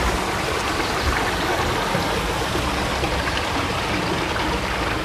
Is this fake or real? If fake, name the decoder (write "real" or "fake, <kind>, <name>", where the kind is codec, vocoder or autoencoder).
real